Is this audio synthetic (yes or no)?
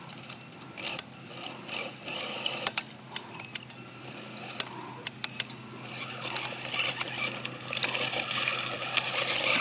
no